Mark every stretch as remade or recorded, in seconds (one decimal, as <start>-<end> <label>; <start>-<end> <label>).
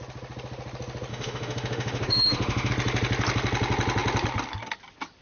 0.0-1.1 recorded; 1.1-2.7 remade; 2.7-5.2 recorded